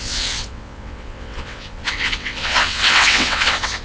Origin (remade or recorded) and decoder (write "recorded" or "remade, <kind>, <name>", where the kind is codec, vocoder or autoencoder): remade, vocoder, WaveNeXt